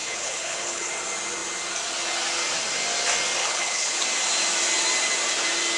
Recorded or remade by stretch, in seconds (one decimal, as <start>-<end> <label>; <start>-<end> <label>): 0.0-0.9 remade; 0.9-3.4 recorded; 3.4-4.0 remade; 4.0-5.8 recorded